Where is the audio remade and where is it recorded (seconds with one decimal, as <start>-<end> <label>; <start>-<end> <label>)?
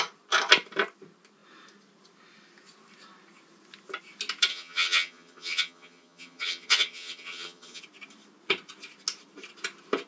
0.0-4.5 recorded; 4.5-7.8 remade; 7.8-10.1 recorded